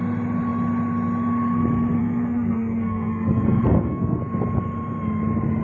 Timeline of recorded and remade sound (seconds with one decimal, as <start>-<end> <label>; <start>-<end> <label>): 0.0-2.0 recorded; 2.0-4.2 remade; 4.2-5.6 recorded